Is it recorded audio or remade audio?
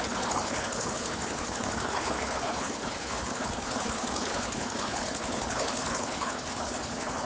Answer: remade